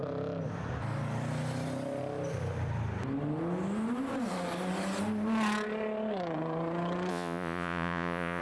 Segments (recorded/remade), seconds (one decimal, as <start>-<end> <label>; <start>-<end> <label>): 0.0-7.1 recorded; 7.1-8.4 remade